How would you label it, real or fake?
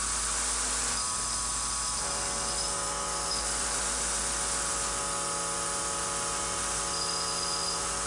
real